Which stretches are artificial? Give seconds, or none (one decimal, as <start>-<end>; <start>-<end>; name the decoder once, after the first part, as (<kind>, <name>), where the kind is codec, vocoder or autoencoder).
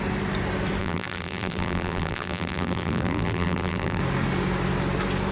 0.8-4.0 (vocoder, BigVGAN v2)